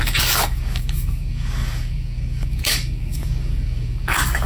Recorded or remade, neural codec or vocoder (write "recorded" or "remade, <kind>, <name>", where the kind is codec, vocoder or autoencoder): remade, codec, DAC